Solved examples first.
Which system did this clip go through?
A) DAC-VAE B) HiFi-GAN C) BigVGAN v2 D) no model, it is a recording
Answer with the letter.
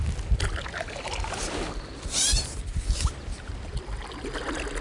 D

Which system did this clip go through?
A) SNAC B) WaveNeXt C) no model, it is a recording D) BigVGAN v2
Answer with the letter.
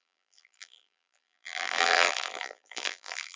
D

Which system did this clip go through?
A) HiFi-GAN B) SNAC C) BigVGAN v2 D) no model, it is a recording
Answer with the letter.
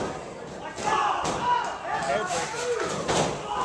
D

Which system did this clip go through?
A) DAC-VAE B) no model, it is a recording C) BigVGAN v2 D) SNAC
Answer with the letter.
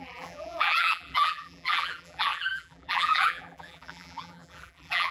C